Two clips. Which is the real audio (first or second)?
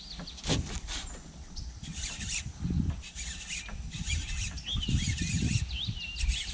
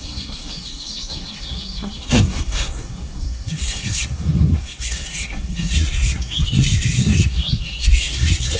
first